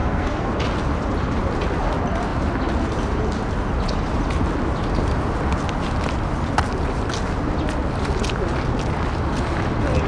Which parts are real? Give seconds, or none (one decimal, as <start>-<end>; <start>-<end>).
0.5-10.1